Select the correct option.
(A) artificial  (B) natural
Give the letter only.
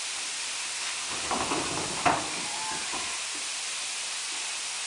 B